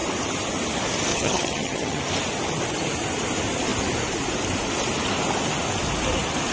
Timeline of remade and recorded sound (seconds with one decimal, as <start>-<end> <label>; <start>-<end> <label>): 0.0-1.1 recorded; 1.1-2.0 remade; 2.0-6.5 recorded